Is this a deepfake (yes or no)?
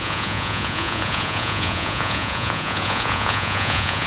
yes